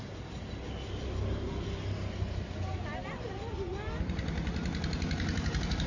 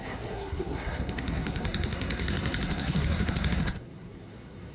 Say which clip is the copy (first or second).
second